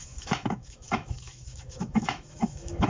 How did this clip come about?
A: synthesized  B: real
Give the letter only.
A